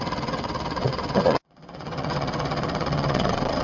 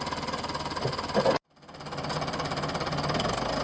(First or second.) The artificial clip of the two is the first